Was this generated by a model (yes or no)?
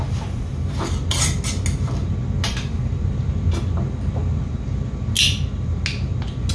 no